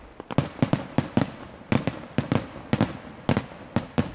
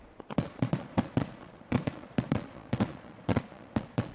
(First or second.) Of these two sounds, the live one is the first